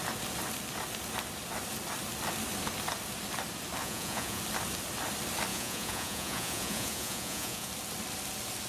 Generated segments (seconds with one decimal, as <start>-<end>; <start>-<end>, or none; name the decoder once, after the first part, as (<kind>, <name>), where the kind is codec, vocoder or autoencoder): 3.8-4.4 (vocoder, Vocos); 5.5-7.7